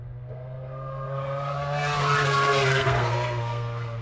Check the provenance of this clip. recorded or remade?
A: remade